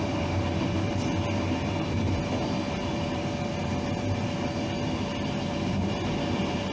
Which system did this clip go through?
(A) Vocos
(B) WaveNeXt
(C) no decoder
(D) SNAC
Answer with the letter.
C